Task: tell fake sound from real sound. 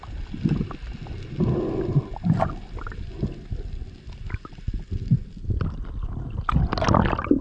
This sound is real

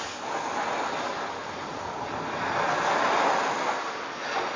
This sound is real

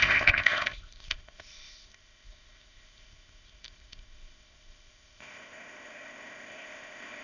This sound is fake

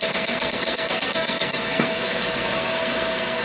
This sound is fake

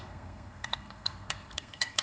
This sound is fake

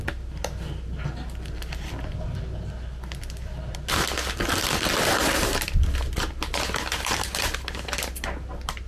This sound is real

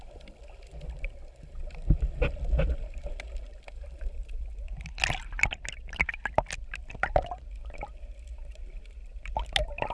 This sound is real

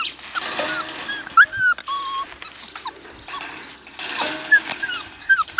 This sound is real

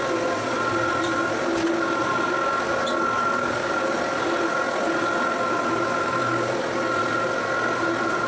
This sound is real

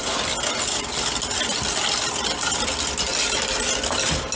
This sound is real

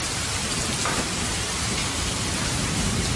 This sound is real